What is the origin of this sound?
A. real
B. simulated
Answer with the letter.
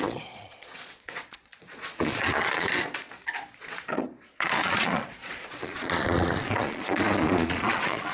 B